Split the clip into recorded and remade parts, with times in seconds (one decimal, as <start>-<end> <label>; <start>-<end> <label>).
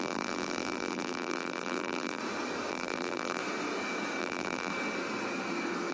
0.0-2.2 remade; 2.2-2.7 recorded; 2.7-3.4 remade; 3.4-4.2 recorded; 4.2-4.7 remade; 4.7-5.9 recorded